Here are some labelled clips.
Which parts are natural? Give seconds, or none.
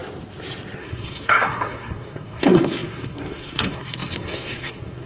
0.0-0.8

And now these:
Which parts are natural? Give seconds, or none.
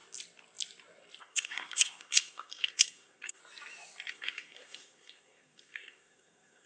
0.0-1.2; 3.4-4.1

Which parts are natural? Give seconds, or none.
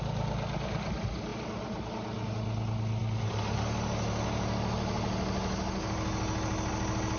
0.0-7.2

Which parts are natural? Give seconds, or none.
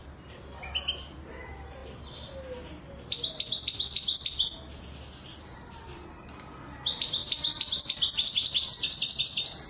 0.0-9.7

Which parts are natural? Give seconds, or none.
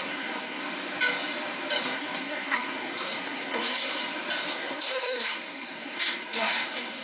0.6-1.8; 4.0-4.5